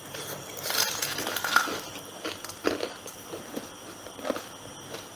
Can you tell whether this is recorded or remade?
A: recorded